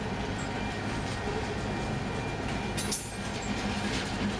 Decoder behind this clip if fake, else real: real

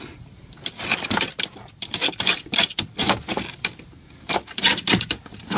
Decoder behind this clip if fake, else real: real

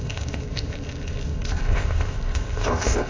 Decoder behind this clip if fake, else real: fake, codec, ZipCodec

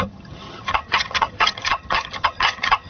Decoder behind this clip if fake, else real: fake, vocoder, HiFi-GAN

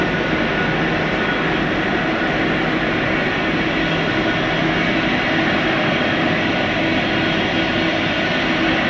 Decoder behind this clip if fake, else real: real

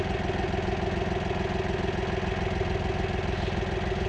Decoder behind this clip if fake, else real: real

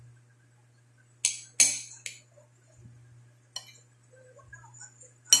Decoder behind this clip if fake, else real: real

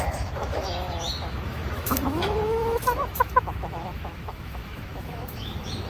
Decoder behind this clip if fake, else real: fake, autoencoder, DAC-VAE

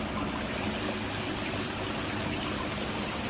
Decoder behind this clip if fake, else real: real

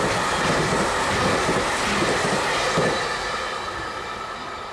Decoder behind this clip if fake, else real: real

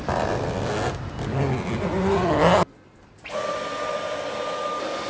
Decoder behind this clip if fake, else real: real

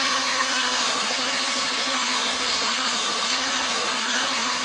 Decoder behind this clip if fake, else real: fake, codec, SNAC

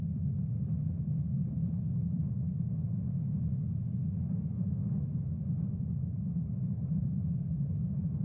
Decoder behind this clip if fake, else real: fake, vocoder, BigVGAN v2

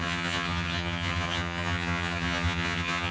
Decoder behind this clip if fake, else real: fake, vocoder, HiFi-GAN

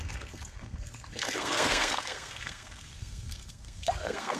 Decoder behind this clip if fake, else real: fake, codec, SNAC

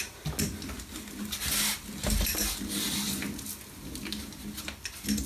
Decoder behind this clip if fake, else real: real